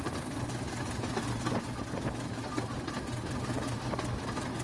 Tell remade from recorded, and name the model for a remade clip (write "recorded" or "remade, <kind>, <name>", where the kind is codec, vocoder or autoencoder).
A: recorded